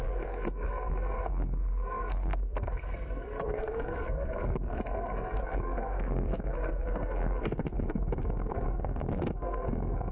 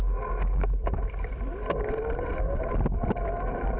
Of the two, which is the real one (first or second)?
second